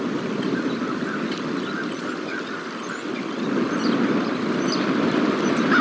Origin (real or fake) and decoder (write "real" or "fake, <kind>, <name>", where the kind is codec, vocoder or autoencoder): real